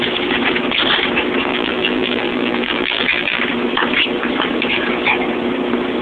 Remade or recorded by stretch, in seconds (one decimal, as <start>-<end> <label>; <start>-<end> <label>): 0.0-1.5 recorded; 1.5-3.4 remade; 3.4-6.0 recorded